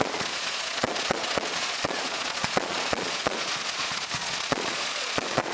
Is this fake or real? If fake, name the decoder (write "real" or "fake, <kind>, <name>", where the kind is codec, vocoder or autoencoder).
fake, vocoder, Vocos